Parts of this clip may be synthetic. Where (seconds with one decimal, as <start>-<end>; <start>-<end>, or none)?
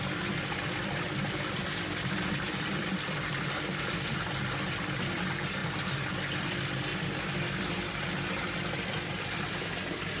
0.0-5.6; 6.5-6.9; 8.0-10.2